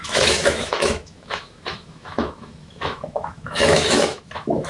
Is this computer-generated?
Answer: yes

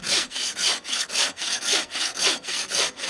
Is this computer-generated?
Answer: yes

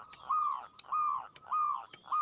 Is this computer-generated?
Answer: no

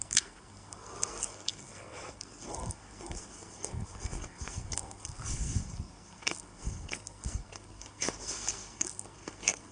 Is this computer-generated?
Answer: yes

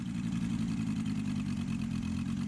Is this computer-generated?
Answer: no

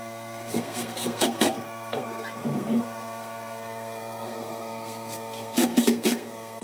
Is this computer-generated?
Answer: yes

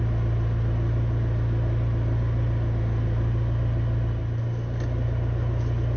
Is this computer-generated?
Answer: no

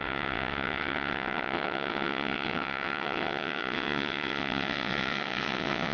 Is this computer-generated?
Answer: yes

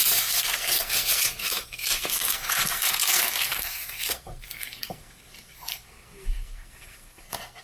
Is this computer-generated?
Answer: yes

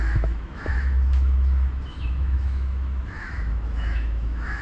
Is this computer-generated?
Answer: yes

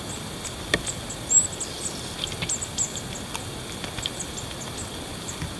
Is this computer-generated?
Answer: no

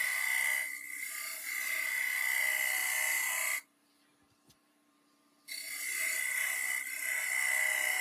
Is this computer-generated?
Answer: yes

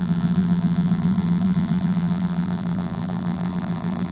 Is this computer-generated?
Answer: yes